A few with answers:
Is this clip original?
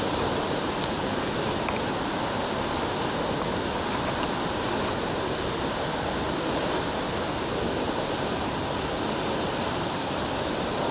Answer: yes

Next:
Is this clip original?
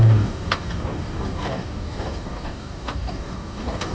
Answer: no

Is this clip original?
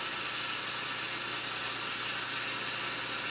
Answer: yes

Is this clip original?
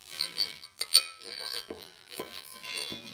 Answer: no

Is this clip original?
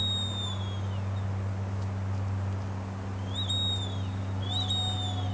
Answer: yes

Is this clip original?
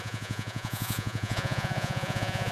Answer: no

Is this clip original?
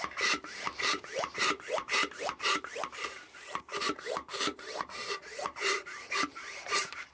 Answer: no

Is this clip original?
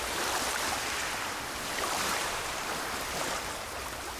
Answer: no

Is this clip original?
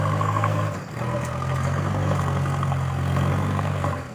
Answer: no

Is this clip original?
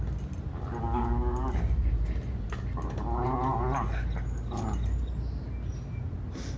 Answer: yes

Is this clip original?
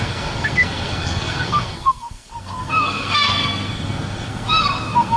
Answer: no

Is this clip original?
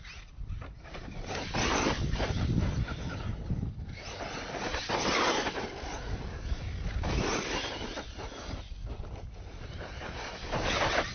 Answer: yes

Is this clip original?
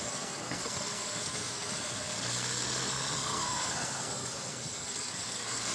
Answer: no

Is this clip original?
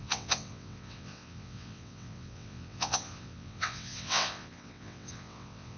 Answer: no